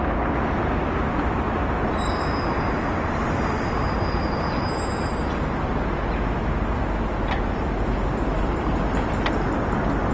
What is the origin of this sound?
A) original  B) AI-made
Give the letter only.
A